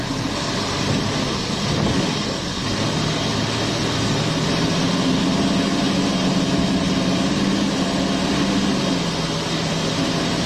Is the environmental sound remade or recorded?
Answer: recorded